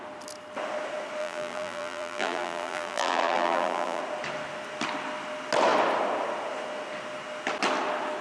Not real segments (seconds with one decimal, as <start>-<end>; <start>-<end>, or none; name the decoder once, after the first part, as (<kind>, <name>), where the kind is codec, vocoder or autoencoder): 1.2-4.0 (vocoder, BigVGAN v2)